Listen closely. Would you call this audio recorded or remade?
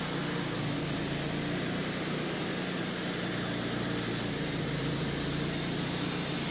recorded